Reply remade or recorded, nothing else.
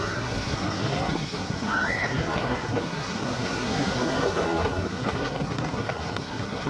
remade